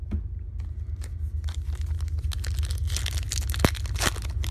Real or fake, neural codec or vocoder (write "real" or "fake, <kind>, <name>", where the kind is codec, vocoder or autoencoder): real